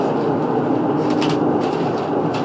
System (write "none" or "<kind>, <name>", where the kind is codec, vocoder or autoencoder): none